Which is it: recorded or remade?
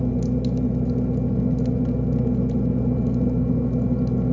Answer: recorded